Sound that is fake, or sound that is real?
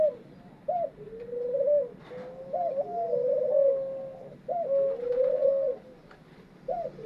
real